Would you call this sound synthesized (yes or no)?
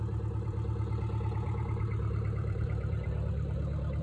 yes